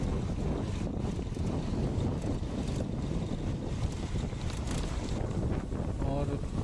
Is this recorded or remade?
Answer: recorded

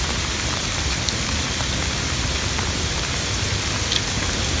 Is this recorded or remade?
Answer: recorded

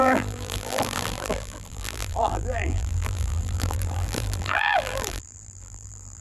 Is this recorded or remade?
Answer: remade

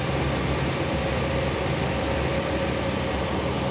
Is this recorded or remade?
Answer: recorded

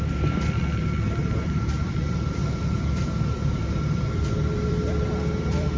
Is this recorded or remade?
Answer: remade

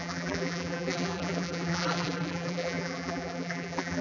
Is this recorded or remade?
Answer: remade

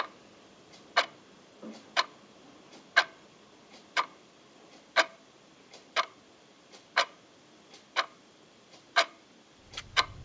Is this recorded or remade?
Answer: remade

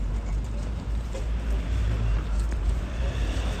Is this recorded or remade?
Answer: remade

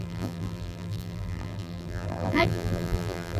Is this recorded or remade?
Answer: remade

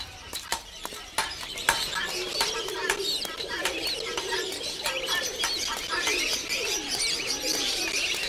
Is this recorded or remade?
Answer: remade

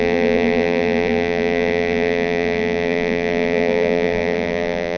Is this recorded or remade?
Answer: remade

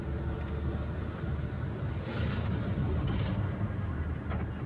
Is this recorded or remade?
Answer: recorded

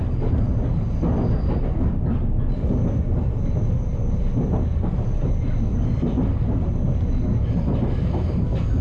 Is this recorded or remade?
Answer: recorded